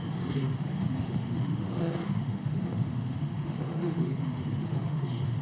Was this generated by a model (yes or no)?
yes